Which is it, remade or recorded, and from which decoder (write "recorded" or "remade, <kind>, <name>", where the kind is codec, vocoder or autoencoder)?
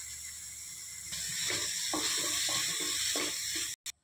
recorded